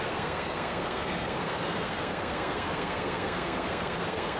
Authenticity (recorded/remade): remade